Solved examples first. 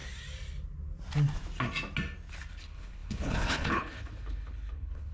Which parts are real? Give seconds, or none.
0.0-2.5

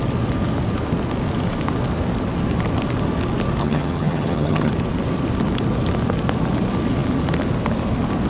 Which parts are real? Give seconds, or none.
0.0-3.6; 4.7-8.3

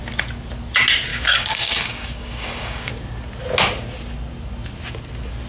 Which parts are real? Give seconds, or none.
0.0-1.1; 2.9-5.5

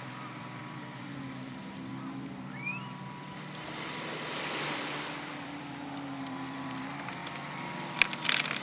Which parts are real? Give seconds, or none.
1.9-4.6

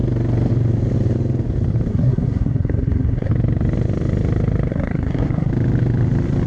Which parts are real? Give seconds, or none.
0.0-1.9; 3.3-4.7; 5.5-6.5